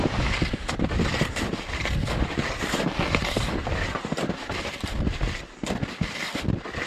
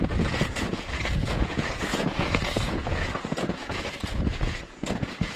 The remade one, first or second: second